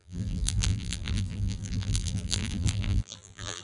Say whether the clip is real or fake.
fake